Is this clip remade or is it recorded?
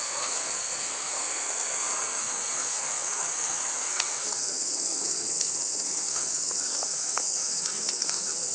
remade